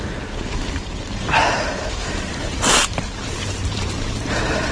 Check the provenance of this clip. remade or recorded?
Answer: remade